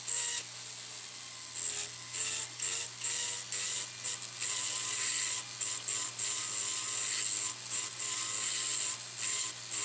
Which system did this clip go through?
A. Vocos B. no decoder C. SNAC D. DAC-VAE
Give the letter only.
B